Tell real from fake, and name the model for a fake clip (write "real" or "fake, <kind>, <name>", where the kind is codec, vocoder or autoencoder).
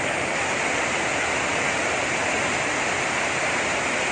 real